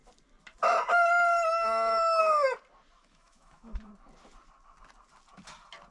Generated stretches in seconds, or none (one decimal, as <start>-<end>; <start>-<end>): 1.5-2.2; 3.0-3.9